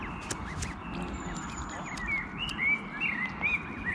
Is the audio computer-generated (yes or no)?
no